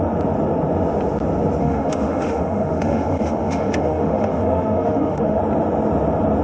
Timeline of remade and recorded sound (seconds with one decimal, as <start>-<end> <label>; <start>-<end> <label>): 0.0-1.6 recorded; 1.6-5.4 remade; 5.4-6.4 recorded